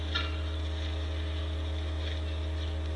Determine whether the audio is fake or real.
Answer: real